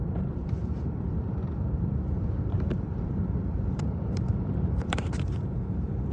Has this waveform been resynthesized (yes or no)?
yes